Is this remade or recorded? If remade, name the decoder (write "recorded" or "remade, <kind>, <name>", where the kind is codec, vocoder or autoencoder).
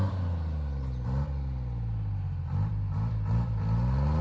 recorded